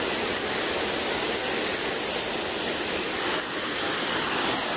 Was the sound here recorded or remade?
recorded